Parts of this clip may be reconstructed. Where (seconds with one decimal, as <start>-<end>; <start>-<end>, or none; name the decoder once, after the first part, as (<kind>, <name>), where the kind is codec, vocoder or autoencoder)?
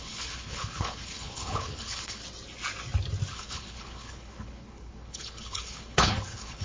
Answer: 0.0-2.2 (codec, HILCodec); 3.3-6.6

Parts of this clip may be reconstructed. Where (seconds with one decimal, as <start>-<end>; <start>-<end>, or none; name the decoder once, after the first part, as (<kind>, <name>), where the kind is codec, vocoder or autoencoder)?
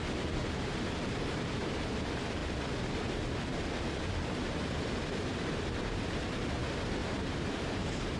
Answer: 0.4-1.6 (vocoder, BigVGAN v2); 3.5-6.0; 7.0-8.2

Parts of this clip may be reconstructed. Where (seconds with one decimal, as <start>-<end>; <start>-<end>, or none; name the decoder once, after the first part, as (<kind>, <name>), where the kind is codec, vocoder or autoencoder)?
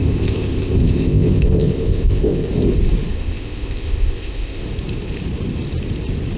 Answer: 0.0-2.5 (codec, ZipCodec); 3.1-4.6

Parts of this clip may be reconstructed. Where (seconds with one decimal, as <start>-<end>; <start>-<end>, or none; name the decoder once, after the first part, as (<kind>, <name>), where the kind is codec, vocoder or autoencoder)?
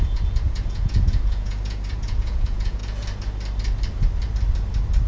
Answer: 0.0-2.8 (vocoder, Vocos)